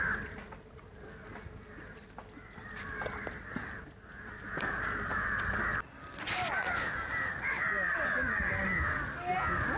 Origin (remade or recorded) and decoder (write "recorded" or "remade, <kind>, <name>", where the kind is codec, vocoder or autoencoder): recorded